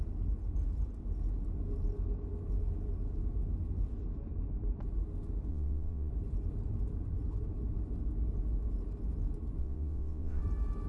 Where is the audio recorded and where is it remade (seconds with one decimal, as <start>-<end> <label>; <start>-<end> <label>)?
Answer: 0.0-5.5 recorded; 5.5-6.1 remade; 6.1-9.6 recorded; 9.6-10.4 remade; 10.4-10.9 recorded